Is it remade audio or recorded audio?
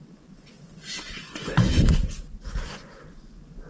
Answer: remade